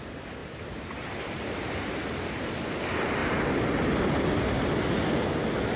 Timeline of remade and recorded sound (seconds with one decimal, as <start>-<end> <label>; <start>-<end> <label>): 0.0-0.4 recorded; 0.4-1.9 remade; 1.9-5.8 recorded